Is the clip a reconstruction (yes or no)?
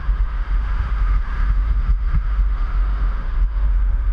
yes